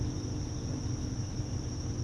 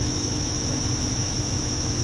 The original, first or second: first